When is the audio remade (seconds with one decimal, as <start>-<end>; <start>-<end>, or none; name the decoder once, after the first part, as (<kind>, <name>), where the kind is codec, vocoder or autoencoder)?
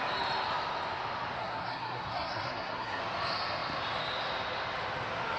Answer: 1.4-3.0 (codec, SNAC)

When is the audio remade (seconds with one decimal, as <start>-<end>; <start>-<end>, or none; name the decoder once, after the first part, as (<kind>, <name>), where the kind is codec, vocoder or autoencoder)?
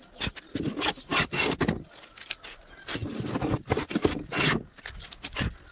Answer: none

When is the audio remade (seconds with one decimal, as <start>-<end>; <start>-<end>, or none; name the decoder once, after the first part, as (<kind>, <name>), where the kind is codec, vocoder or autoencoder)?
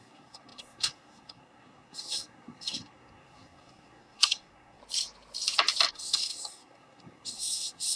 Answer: 0.0-4.8 (codec, SNAC); 5.9-8.0